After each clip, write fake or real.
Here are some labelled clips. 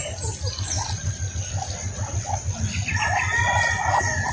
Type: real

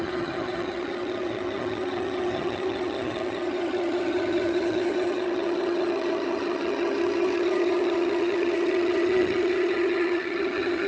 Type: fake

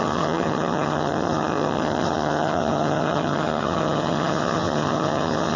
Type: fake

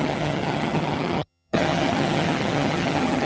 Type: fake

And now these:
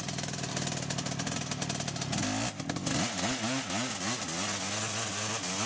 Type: real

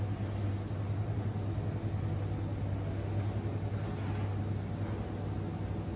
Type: real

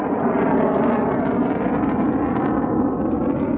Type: real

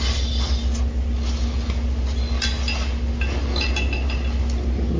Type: real